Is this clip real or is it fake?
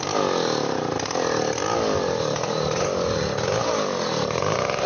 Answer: real